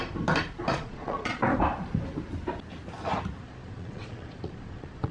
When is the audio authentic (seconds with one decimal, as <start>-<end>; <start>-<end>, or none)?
0.0-0.7; 1.4-3.4